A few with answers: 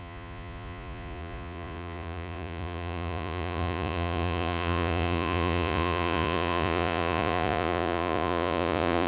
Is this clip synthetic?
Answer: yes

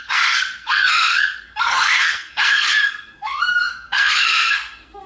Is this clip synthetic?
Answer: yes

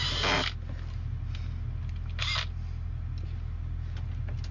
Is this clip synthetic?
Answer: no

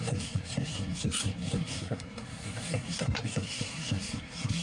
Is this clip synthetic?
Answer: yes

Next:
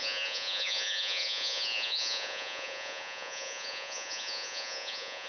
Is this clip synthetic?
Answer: yes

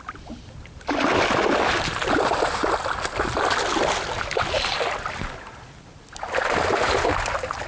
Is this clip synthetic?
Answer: no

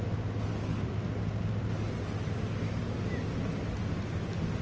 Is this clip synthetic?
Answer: no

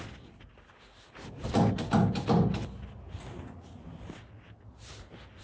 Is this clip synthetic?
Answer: no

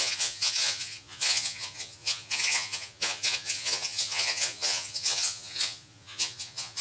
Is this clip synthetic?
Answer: yes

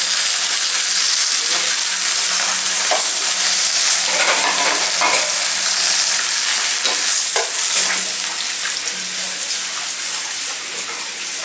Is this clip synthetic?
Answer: no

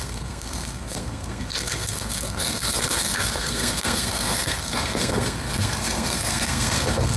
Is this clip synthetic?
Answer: yes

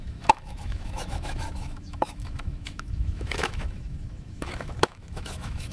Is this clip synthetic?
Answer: yes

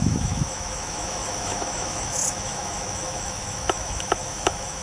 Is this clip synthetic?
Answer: yes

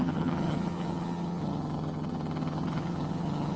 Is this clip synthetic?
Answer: yes